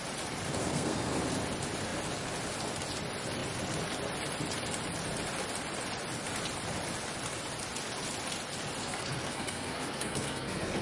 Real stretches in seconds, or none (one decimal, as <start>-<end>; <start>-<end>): 0.0-0.6; 1.2-8.8